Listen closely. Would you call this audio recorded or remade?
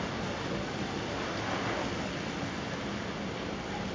recorded